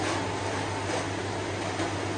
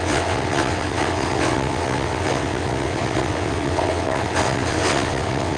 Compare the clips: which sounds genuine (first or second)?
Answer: first